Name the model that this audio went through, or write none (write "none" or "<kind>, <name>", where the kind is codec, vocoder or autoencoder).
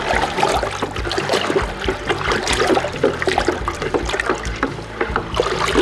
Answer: none